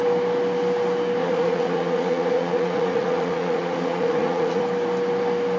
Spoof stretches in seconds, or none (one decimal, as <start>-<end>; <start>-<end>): 1.2-4.6